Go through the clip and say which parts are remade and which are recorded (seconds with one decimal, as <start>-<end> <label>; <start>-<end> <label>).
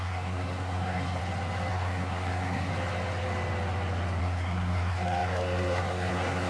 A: 0.0-1.2 remade; 1.2-1.7 recorded; 1.7-2.7 remade; 2.7-4.2 recorded; 4.2-6.5 remade